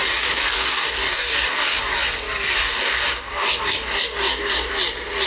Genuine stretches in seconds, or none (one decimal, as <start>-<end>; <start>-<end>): 1.8-2.6; 4.7-5.3